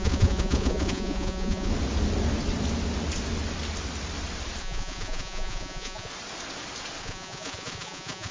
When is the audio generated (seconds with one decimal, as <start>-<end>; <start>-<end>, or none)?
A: 0.0-1.7; 4.6-6.1; 7.0-8.3